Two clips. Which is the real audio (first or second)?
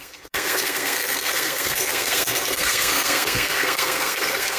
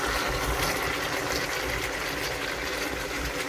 second